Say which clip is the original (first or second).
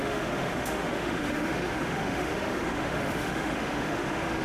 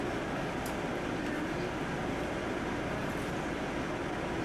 second